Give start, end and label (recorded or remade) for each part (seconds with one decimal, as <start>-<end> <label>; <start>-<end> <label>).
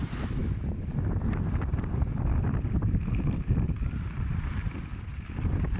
0.0-0.4 recorded; 0.4-3.9 remade; 3.9-4.9 recorded; 4.9-5.8 remade